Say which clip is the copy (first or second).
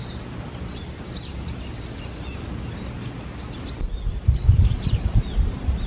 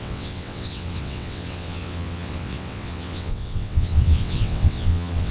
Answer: second